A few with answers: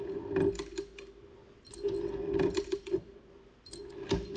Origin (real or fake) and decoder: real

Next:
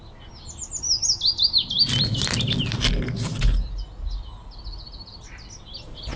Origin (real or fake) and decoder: real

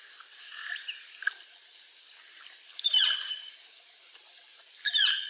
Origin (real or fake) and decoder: real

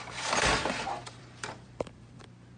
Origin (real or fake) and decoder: fake, vocoder, BigVGAN v2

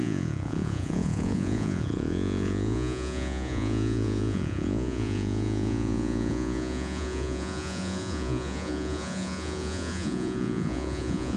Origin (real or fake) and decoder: fake, vocoder, Vocos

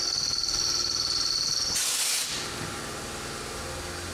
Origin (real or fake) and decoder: real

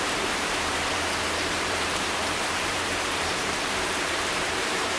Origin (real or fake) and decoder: fake, vocoder, BigVGAN v2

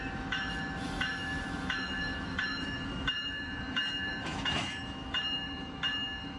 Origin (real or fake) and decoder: fake, autoencoder, DAC-VAE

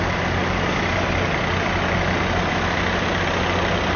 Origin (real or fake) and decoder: real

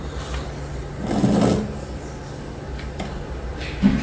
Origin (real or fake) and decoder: real